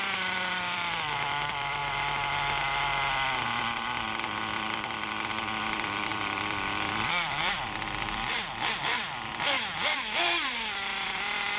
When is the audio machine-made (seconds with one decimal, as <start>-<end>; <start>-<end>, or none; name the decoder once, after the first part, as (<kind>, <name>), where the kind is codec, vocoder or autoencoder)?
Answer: 0.0-1.8 (vocoder, BigVGAN v2); 5.6-9.3; 9.9-11.6